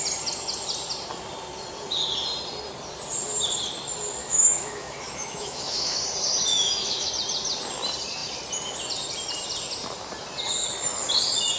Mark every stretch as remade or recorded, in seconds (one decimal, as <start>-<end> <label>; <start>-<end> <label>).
0.0-4.2 recorded; 4.2-6.0 remade; 6.0-6.5 recorded; 6.5-7.1 remade; 7.1-11.6 recorded